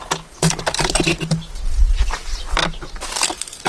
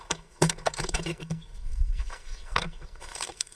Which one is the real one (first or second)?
first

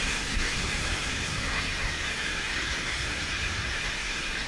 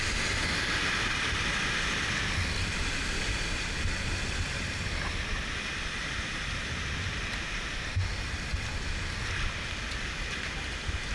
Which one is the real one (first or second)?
second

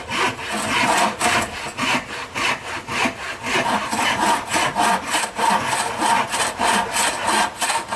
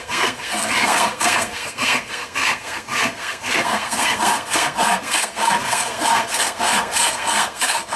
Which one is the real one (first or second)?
first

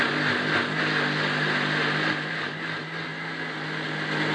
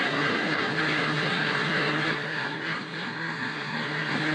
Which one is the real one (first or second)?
first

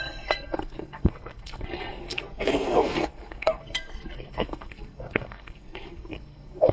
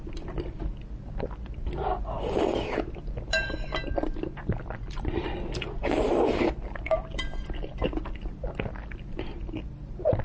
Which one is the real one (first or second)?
second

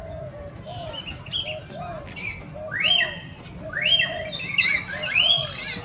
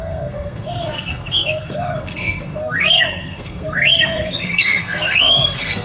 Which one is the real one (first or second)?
first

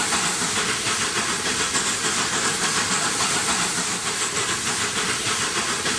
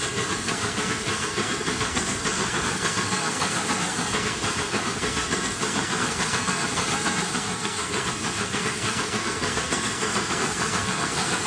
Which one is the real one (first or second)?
first